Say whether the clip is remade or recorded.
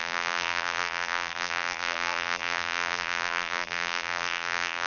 remade